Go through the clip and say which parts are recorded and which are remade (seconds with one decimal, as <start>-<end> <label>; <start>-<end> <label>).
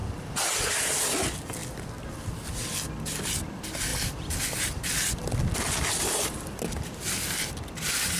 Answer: 0.0-8.2 recorded